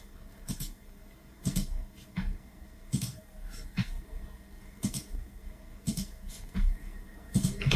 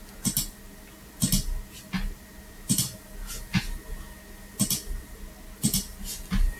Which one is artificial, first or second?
first